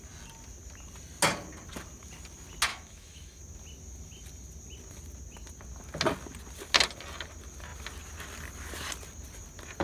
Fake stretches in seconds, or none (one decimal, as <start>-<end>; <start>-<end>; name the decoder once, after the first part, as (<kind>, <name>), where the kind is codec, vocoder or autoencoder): 2.7-3.4 (autoencoder, DAC-VAE)